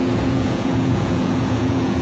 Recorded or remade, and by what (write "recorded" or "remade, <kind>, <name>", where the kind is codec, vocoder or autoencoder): remade, vocoder, Vocos